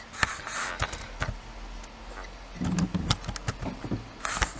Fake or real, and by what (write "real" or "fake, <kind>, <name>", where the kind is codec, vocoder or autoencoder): real